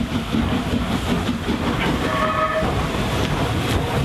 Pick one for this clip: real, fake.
real